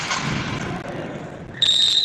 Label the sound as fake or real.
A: real